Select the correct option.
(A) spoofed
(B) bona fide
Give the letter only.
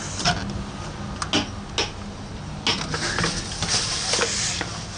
B